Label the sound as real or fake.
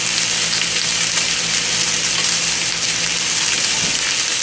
real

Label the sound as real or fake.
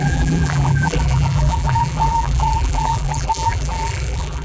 fake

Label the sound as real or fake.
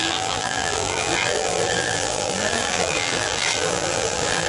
fake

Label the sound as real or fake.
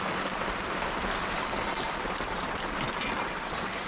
real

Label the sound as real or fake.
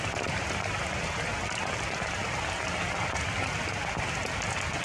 real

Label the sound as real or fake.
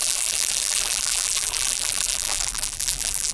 fake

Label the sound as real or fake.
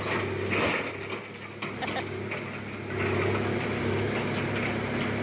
real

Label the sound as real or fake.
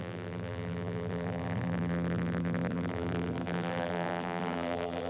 fake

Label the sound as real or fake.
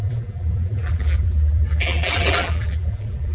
fake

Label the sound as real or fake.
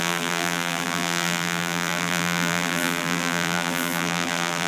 fake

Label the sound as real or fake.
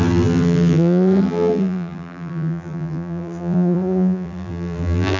fake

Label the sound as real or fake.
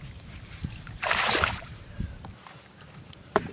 fake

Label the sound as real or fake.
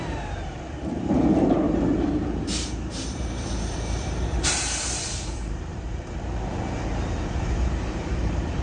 fake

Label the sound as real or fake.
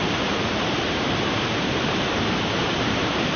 fake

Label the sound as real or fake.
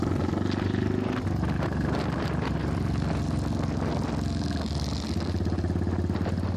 real